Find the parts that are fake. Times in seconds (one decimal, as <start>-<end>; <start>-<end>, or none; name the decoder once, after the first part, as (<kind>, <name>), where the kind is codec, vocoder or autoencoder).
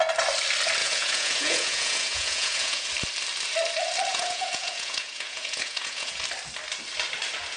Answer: 0.8-2.9 (vocoder, Vocos); 4.1-6.2